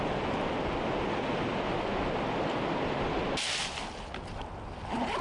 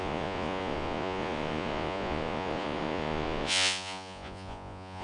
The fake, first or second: second